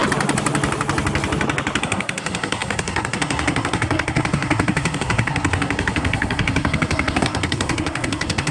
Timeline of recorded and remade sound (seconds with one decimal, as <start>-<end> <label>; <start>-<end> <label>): 0.0-1.8 recorded; 1.8-8.5 remade